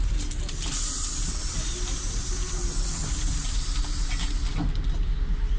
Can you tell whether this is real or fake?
real